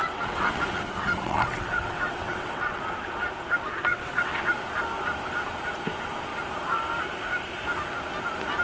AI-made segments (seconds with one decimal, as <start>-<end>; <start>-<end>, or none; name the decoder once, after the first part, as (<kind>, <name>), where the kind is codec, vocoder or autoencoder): 0.0-2.8 (vocoder, WaveNeXt); 3.9-4.5

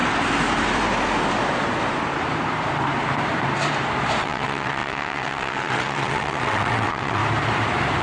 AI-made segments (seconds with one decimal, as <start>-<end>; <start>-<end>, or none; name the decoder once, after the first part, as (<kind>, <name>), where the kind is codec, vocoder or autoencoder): 4.2-7.2 (vocoder, WaveNeXt)

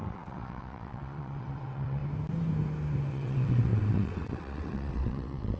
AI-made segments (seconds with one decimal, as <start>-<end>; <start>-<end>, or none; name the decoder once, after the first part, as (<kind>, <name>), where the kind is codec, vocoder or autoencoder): 0.0-2.0 (vocoder, WaveNeXt); 3.1-5.6

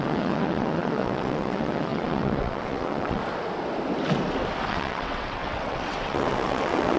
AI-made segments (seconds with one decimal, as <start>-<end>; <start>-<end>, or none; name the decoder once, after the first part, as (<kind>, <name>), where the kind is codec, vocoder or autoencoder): 0.0-3.2 (vocoder, WaveNeXt); 4.7-7.0

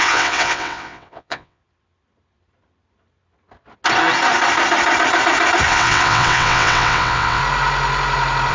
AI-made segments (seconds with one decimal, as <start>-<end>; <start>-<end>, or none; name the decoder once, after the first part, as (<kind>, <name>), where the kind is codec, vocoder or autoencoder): 0.0-1.6 (vocoder, WaveNeXt); 5.7-7.4

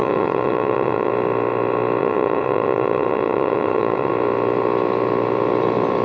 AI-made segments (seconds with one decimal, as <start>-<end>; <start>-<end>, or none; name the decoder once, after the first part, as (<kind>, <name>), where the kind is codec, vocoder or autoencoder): 0.0-1.1 (vocoder, WaveNeXt); 2.0-4.1

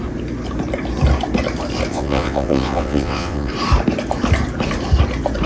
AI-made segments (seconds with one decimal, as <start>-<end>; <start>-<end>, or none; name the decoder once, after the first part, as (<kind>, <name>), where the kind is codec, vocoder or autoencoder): 1.9-3.5 (vocoder, WaveNeXt)

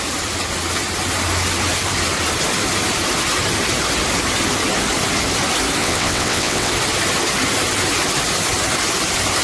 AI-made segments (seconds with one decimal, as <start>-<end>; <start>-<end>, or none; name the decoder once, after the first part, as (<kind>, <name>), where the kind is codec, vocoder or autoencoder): 5.8-6.7 (vocoder, WaveNeXt)